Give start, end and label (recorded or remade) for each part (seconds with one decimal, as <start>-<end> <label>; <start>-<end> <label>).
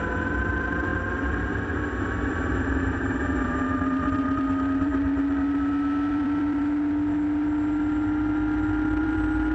0.0-4.9 remade; 4.9-6.1 recorded; 6.1-6.6 remade; 6.6-9.0 recorded; 9.0-9.5 remade